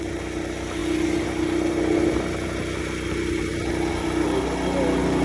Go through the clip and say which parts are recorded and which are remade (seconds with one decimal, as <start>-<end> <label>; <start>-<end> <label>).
0.0-5.2 recorded